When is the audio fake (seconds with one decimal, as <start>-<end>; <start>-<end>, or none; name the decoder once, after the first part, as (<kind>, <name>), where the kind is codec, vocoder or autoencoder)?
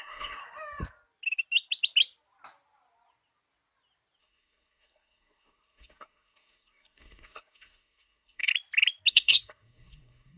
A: 0.0-0.4 (codec, SNAC); 4.2-8.5; 9.1-10.4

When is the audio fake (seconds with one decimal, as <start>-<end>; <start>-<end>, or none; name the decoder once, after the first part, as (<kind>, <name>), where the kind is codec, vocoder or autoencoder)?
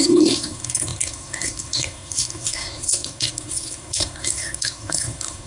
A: 0.0-5.5 (codec, SNAC)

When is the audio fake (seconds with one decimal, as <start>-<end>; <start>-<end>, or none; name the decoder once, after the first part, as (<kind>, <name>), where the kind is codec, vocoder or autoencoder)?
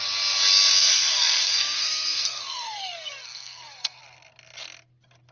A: 0.8-4.0 (codec, SNAC)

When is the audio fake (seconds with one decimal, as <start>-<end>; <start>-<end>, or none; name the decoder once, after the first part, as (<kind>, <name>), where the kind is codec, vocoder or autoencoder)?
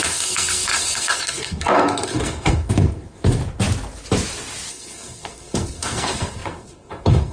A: 0.0-3.4 (codec, SNAC); 4.7-7.3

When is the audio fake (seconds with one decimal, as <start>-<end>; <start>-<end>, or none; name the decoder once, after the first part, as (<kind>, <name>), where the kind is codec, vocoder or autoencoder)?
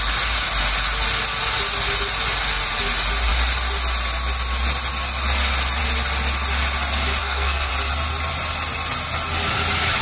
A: 7.2-7.7 (codec, SNAC)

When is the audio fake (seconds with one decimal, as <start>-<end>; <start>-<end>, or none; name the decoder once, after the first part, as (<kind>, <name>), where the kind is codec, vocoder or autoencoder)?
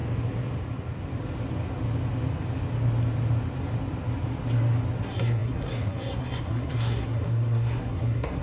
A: 5.0-8.4 (codec, SNAC)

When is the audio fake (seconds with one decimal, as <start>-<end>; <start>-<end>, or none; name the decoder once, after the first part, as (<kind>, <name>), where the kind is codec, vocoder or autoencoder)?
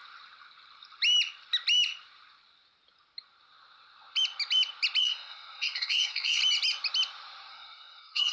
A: 5.0-6.4 (codec, SNAC); 7.5-8.3